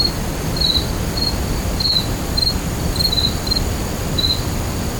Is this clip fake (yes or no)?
yes